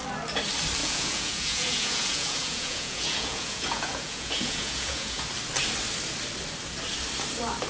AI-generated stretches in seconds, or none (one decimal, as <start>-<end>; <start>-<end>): 0.8-5.2